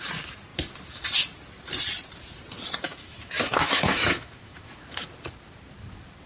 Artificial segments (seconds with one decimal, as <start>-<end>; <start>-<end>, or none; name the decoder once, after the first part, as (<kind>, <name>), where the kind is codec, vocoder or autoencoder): 2.9-4.8 (autoencoder, DAC-VAE)